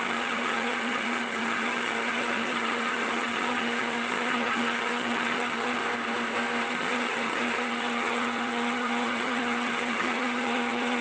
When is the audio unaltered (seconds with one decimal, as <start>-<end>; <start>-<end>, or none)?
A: 5.8-6.7